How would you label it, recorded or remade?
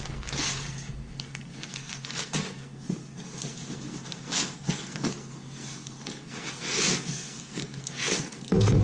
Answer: remade